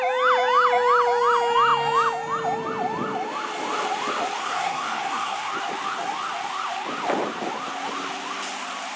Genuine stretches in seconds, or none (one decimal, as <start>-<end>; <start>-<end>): 0.0-4.4; 5.5-9.0